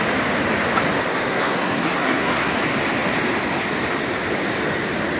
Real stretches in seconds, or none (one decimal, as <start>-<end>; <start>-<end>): 0.0-1.1; 2.6-5.2